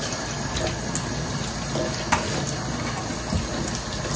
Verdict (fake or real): real